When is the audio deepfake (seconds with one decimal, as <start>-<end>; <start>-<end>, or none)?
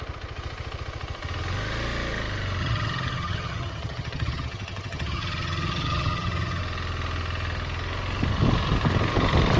2.6-6.6